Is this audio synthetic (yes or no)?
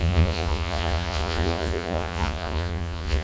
yes